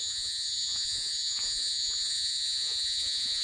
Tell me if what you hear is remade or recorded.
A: remade